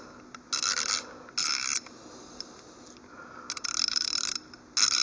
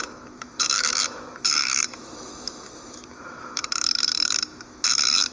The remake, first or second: second